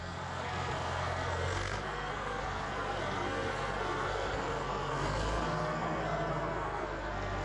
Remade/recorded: remade